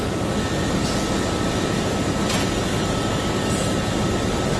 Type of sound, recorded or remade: recorded